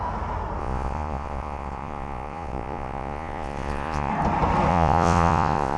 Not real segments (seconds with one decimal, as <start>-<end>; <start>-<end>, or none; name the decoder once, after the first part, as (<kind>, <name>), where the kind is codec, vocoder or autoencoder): 0.6-4.1 (vocoder, Vocos); 4.7-5.8